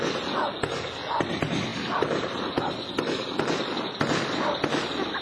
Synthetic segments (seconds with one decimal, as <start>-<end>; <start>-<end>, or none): none

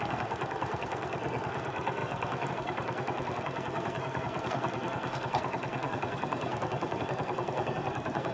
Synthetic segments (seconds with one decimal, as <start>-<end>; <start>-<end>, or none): 0.0-8.3

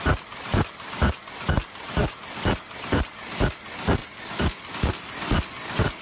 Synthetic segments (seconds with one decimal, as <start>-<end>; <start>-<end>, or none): none

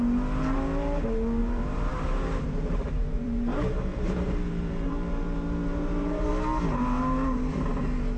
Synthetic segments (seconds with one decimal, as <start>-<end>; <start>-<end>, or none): 1.4-6.3

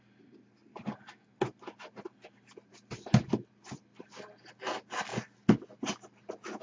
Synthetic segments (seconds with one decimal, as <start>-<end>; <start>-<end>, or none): none

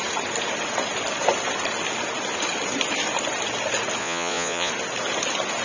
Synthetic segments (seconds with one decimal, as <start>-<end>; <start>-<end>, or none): 4.0-4.7

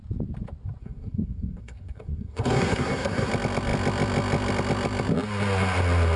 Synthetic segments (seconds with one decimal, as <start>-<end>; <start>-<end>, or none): 0.8-3.3

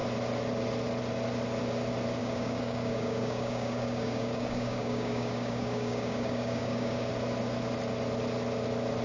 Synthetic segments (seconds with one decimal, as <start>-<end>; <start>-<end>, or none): 2.2-7.1